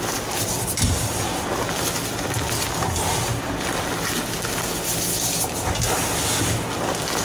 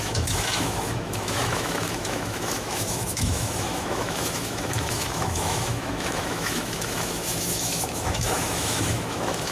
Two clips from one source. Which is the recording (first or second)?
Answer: first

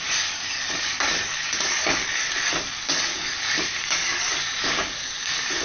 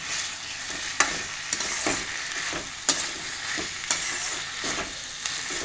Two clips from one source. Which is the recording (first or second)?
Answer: second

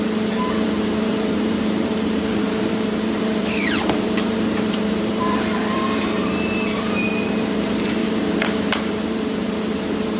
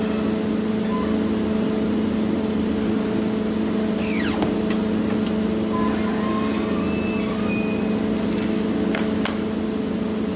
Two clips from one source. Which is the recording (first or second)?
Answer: second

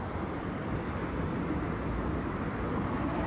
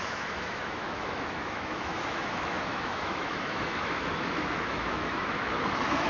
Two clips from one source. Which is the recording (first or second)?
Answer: first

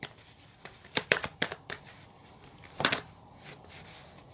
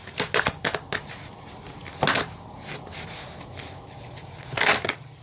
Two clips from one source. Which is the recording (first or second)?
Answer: second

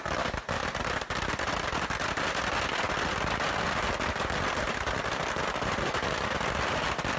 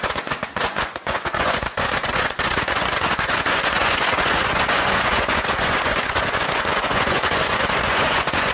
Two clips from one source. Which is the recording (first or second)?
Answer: first